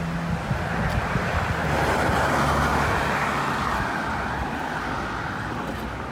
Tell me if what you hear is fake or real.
real